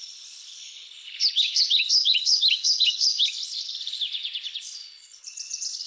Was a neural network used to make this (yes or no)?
yes